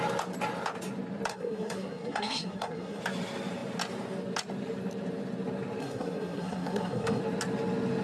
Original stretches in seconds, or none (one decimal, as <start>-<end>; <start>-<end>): 0.0-1.3; 3.0-5.8; 7.2-8.0